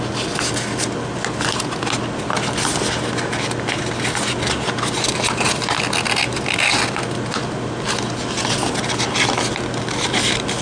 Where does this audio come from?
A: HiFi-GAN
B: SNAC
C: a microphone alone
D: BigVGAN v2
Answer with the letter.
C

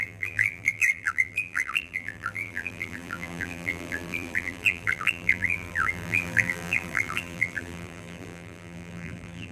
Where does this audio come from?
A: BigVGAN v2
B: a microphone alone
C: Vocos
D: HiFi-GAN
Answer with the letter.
A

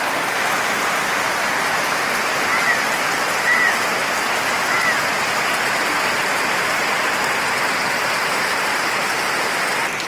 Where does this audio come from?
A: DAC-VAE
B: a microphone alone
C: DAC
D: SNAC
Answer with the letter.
B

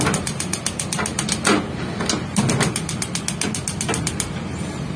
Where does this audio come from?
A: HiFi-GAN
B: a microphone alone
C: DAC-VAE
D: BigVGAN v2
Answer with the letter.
B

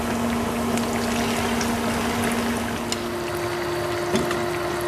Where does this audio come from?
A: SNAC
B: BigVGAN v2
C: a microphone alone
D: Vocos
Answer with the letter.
C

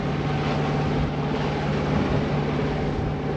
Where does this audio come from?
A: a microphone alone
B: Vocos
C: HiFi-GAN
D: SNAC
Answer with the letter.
A